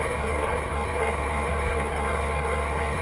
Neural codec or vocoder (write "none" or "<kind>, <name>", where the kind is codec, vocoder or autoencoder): codec, SNAC